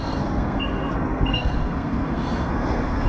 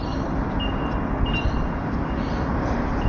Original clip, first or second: second